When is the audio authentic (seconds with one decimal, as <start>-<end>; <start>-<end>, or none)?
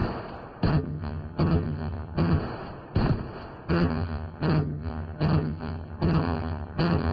0.0-0.7; 2.4-3.7